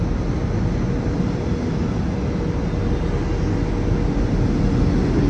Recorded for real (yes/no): yes